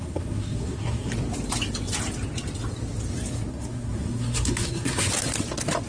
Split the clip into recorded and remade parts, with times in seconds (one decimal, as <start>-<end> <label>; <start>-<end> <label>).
0.0-1.1 remade; 1.1-3.5 recorded; 3.5-5.1 remade; 5.1-5.9 recorded